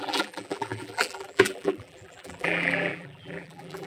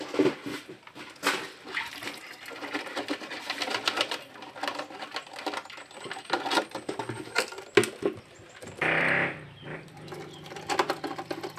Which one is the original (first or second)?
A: second